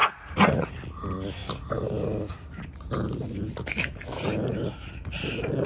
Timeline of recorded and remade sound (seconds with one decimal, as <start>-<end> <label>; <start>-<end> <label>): 0.0-0.7 remade; 0.7-5.7 recorded